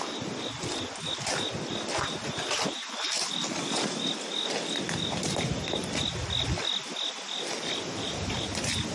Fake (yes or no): no